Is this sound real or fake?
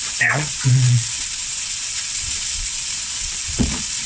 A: fake